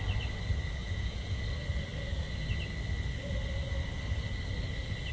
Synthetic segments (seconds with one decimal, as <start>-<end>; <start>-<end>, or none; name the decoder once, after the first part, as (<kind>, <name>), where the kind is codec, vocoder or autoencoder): 0.8-1.4 (vocoder, Vocos)